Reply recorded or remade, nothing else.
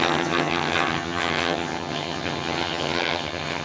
remade